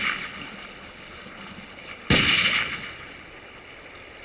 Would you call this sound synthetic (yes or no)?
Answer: no